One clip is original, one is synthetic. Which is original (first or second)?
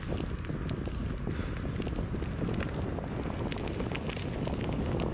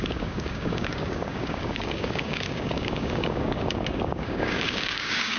first